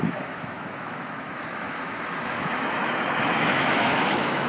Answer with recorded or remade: remade